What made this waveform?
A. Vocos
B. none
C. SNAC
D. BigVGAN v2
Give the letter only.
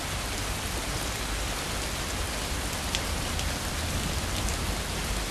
B